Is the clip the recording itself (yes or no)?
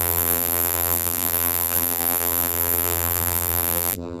no